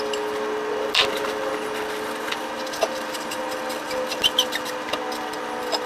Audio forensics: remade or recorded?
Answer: recorded